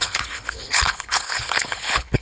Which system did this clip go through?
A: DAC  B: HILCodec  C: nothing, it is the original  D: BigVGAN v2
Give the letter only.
B